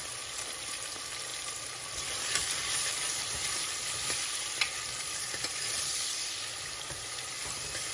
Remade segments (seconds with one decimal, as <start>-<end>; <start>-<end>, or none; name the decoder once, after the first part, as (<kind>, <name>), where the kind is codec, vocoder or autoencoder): 0.0-7.9 (vocoder, BigVGAN v2)